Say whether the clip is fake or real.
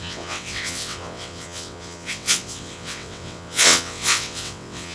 fake